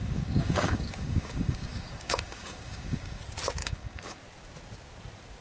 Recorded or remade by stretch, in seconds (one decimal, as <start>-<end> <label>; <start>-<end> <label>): 0.0-3.2 remade; 3.2-3.6 recorded; 3.6-4.2 remade; 4.2-5.4 recorded

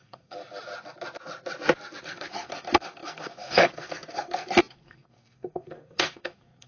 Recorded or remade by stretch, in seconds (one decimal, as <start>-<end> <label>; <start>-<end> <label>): 0.0-0.4 remade; 0.4-2.0 recorded; 2.0-6.7 remade

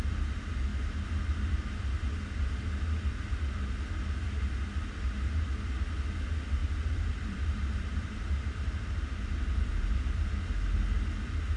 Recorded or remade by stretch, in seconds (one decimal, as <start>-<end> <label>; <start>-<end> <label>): 0.0-6.6 recorded; 6.6-10.3 remade; 10.3-11.6 recorded

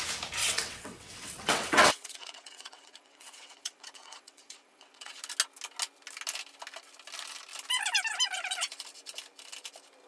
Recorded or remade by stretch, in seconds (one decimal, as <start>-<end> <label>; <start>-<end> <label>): 0.0-0.4 recorded; 0.4-5.2 remade; 5.2-10.1 recorded

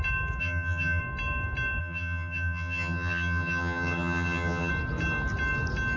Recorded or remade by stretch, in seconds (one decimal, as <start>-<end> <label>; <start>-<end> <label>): 0.0-0.4 recorded; 0.4-1.0 remade; 1.0-1.8 recorded; 1.8-4.7 remade; 4.7-6.0 recorded